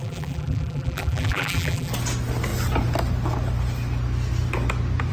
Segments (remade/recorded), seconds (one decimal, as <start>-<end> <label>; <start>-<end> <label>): 0.0-1.9 remade; 1.9-5.1 recorded